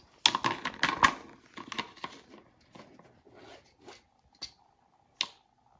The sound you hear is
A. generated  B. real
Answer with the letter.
B